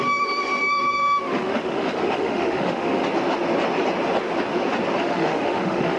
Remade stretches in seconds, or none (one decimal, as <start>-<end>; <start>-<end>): 0.0-3.0; 5.0-6.0